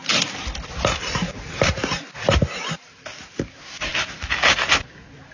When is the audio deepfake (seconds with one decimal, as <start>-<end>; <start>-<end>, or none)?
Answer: none